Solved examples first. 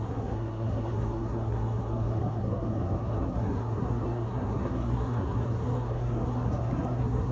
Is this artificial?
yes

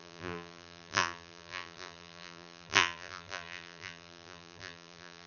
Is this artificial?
yes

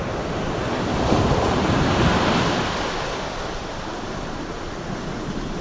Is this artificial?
no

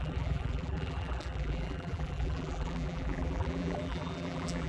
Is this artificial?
yes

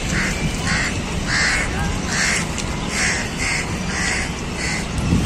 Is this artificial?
no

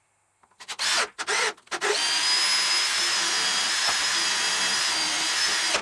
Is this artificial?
no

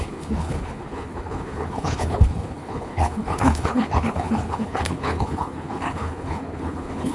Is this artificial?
yes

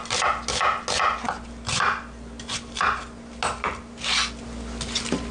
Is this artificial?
no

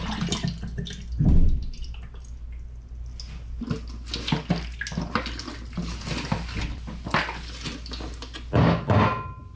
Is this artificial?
no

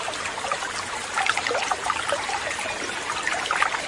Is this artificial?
no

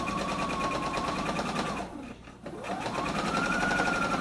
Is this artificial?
no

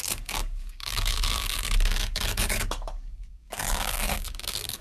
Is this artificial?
yes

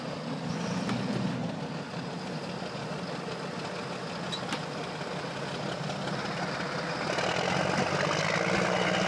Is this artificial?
no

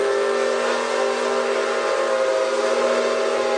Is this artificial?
no